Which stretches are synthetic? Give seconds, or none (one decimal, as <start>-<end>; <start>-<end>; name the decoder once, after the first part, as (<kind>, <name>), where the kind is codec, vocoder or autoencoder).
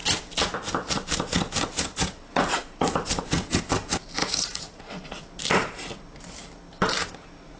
4.2-5.2 (vocoder, Vocos)